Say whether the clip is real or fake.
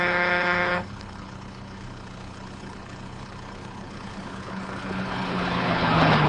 fake